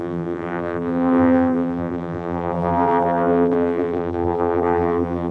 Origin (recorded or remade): remade